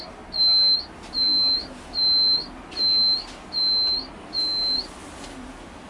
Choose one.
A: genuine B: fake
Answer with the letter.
A